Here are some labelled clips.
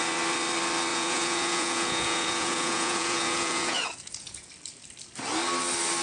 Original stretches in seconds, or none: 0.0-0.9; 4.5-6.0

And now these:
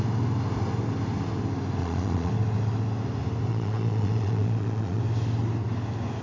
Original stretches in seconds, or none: 0.0-1.8; 2.3-3.5; 5.0-6.2

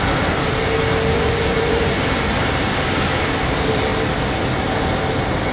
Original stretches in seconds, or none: 0.0-1.1; 2.4-5.5

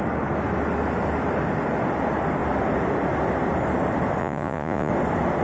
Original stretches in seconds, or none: 0.0-4.2; 4.9-5.4

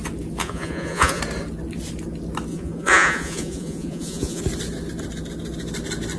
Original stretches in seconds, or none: 0.0-0.4; 1.2-2.5; 4.4-6.2

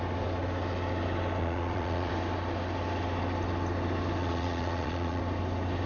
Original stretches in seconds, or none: 0.0-1.4; 2.1-4.2; 5.2-5.9